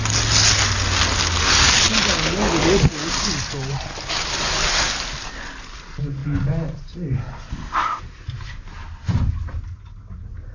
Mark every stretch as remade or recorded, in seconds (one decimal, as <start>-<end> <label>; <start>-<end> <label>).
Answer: 0.0-7.5 recorded; 7.5-8.0 remade; 8.0-10.5 recorded